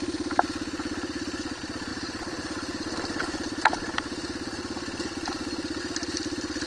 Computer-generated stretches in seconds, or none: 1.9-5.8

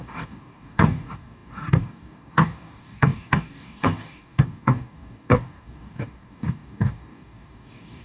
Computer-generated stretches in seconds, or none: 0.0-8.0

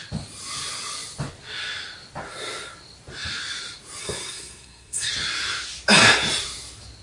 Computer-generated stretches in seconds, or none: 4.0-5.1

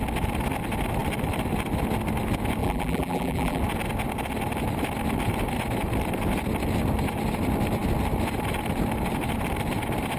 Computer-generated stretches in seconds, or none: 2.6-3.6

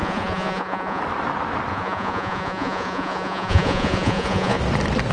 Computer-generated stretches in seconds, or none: 0.0-1.0; 1.7-4.6

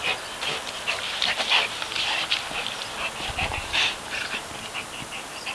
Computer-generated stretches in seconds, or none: 3.6-4.5